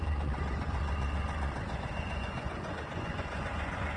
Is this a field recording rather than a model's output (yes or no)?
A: no